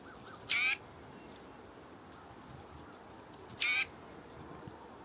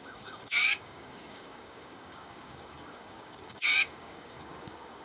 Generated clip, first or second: second